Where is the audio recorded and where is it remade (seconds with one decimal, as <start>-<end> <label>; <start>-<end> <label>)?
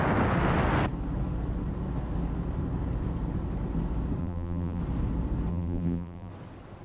0.0-4.2 recorded; 4.2-4.8 remade; 4.8-5.5 recorded; 5.5-6.3 remade; 6.3-6.8 recorded